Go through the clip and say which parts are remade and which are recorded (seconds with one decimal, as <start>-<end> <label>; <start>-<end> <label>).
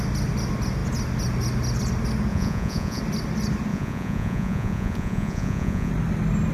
0.0-2.3 recorded; 2.3-3.0 remade; 3.0-3.7 recorded; 3.7-5.9 remade; 5.9-6.5 recorded